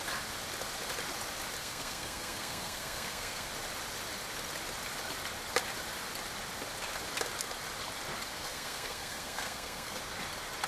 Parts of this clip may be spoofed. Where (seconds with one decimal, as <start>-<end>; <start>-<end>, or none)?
1.6-3.5; 8.3-10.0